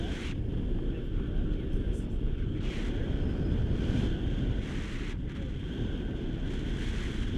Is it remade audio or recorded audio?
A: recorded